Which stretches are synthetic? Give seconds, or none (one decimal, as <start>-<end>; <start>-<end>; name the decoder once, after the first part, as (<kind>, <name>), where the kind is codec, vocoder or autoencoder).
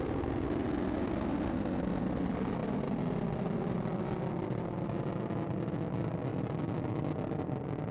none